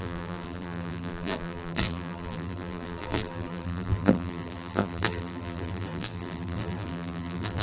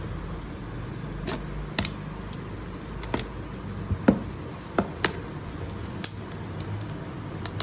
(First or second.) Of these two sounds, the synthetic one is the first